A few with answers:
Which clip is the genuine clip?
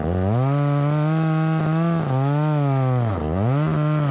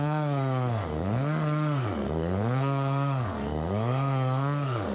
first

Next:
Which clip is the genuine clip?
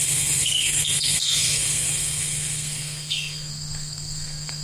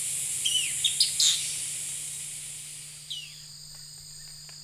second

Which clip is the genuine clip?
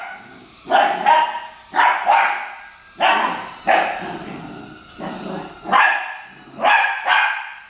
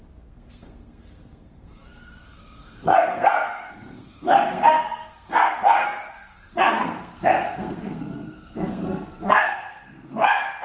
first